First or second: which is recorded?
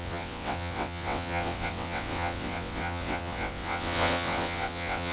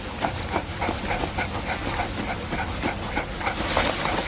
second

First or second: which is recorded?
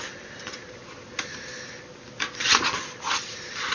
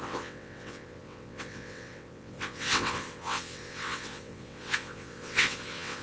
first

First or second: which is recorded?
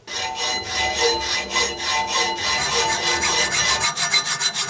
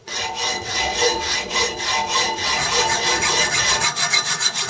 first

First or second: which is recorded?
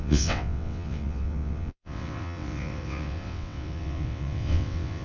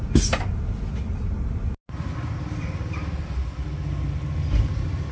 second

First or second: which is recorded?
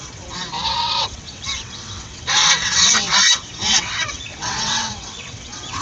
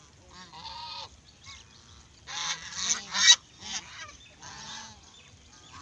second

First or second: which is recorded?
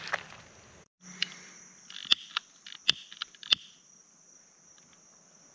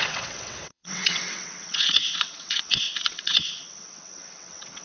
first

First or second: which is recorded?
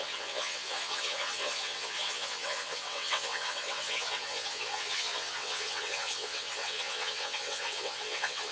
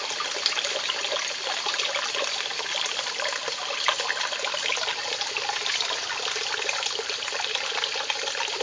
second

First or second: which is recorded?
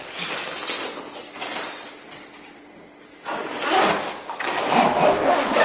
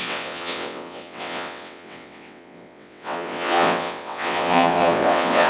first